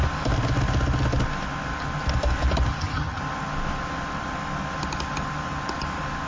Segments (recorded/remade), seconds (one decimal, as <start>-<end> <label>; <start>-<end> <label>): 0.0-2.7 recorded; 2.7-3.2 remade; 3.2-6.3 recorded